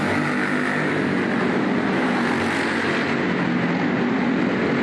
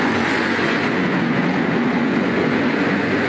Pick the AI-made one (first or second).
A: second